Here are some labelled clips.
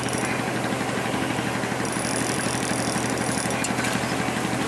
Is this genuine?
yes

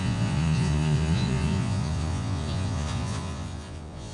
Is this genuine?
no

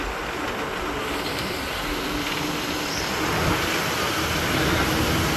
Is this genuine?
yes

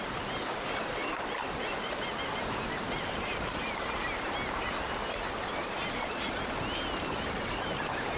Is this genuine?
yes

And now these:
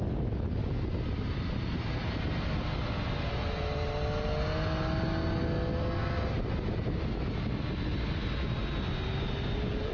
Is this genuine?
yes